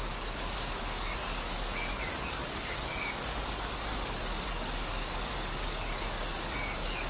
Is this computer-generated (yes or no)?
yes